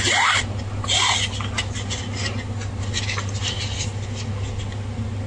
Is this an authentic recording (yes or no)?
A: yes